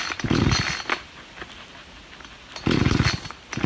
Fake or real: real